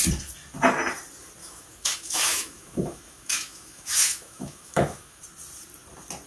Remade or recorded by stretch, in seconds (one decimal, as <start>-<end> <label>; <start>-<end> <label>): 0.0-1.4 recorded; 1.4-5.2 remade; 5.2-6.3 recorded